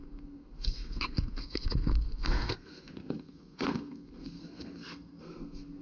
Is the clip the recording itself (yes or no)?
no